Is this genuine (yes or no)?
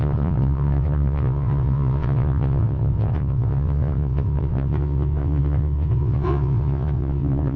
no